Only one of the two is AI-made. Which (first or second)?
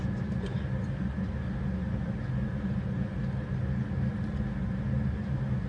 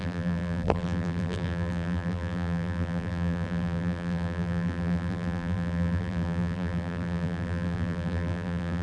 second